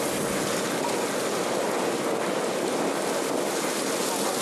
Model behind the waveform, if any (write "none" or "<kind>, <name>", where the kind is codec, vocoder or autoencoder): none